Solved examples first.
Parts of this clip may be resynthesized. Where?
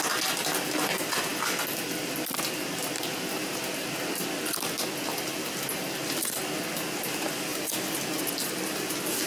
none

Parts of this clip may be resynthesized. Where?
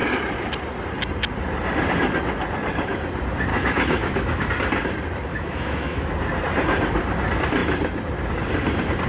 3.5-4.5 (autoencoder, DAC-VAE); 5.3-6.1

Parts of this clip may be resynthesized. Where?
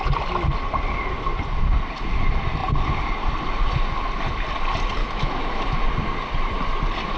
5.0-5.7 (autoencoder, DAC-VAE)